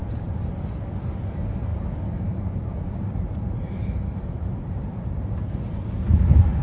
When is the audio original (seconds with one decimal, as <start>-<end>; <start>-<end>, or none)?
0.7-1.7; 5.1-6.6